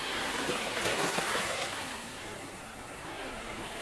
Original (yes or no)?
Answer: no